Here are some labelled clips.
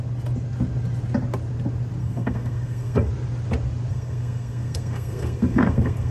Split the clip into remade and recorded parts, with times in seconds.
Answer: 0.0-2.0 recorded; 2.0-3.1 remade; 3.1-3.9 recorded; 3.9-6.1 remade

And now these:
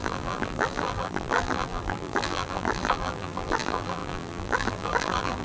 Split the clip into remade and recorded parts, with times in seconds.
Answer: 0.0-5.4 remade

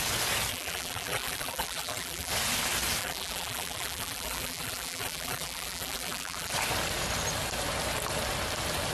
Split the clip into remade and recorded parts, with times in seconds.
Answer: 0.0-0.5 recorded; 0.5-2.3 remade; 2.3-3.0 recorded; 3.0-6.5 remade; 6.5-8.9 recorded

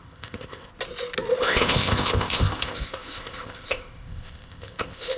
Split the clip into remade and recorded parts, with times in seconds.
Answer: 0.0-0.7 remade; 0.7-1.4 recorded; 1.4-5.2 remade

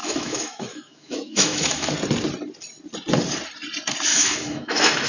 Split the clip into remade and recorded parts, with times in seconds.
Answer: 0.0-1.9 remade; 1.9-4.1 recorded; 4.1-5.1 remade

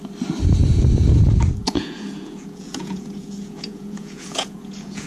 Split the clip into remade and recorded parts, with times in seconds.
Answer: 0.0-1.6 recorded; 1.6-5.1 remade

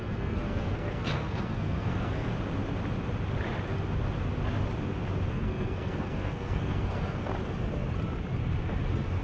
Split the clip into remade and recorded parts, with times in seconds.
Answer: 0.0-2.3 remade; 2.3-5.3 recorded; 5.3-7.3 remade; 7.3-9.2 recorded

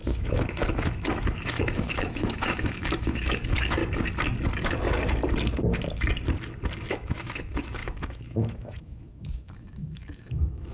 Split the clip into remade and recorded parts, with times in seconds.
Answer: 0.0-3.8 remade; 3.8-6.9 recorded; 6.9-10.7 remade